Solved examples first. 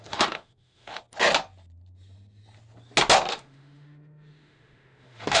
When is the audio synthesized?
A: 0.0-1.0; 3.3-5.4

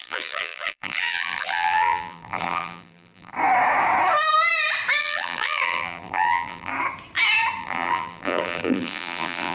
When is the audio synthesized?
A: 0.0-3.3; 5.0-6.7; 7.6-9.5